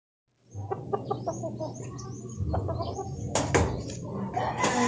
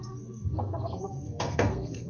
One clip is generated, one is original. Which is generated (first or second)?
second